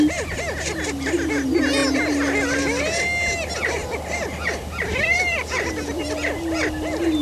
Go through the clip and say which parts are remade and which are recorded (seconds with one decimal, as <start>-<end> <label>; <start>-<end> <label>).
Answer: 0.0-7.2 recorded